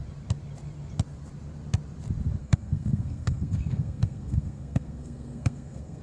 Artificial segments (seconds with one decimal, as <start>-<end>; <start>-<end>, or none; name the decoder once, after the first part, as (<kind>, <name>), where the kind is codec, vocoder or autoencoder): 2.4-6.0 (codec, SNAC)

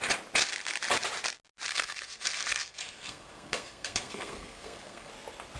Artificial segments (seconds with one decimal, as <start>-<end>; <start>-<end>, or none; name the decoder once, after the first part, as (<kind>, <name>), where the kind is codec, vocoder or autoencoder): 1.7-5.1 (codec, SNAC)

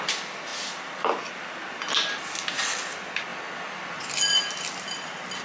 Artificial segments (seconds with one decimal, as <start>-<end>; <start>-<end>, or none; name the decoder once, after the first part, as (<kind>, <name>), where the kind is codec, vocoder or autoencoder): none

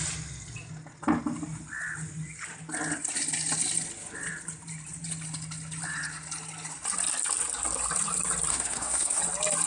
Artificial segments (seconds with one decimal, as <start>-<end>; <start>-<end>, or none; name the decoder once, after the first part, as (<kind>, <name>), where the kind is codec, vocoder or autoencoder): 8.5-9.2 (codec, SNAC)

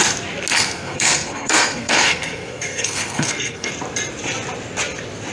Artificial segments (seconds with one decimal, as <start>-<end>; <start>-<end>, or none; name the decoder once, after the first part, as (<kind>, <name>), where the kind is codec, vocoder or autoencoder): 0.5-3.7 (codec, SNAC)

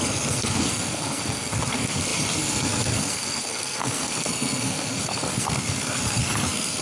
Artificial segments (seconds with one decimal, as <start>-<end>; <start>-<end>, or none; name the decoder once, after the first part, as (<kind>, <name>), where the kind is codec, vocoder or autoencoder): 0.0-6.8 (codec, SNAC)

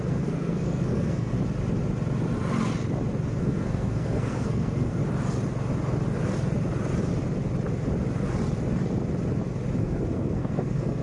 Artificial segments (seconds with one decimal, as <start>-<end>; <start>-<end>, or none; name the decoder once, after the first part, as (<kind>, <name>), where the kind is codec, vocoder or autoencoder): 0.0-1.3 (codec, SNAC); 3.4-5.0; 9.8-11.0

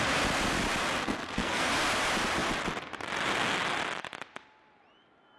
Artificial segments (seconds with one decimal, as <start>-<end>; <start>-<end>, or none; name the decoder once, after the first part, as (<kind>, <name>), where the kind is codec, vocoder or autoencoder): 1.0-1.7 (codec, SNAC)